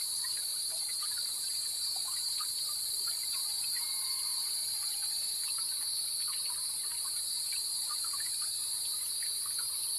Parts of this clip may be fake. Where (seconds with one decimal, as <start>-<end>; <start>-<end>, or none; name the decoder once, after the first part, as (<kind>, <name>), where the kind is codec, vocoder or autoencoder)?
0.5-1.5 (vocoder, BigVGAN v2); 2.5-3.5